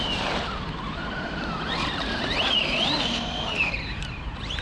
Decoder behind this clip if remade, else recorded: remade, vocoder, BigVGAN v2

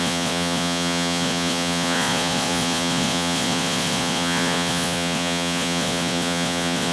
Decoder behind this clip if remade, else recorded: remade, vocoder, Vocos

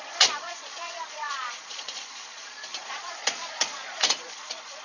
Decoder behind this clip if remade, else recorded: remade, vocoder, Vocos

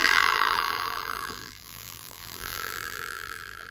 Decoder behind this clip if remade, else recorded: remade, vocoder, BigVGAN v2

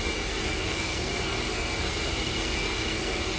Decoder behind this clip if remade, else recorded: remade, codec, SNAC